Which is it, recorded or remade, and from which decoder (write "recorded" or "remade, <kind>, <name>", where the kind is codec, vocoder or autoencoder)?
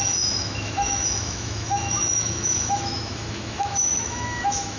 remade, autoencoder, DAC-VAE